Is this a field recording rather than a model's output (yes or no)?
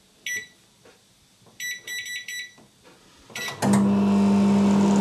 yes